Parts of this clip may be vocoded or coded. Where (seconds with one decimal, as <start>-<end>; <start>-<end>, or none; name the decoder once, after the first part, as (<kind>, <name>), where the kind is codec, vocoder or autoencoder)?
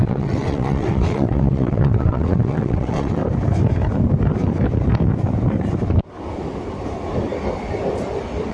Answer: 0.0-3.2 (vocoder, WaveNeXt)